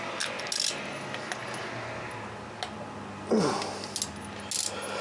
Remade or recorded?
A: recorded